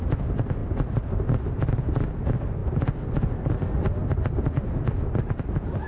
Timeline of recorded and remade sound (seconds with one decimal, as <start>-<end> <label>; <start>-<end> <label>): 0.0-5.9 recorded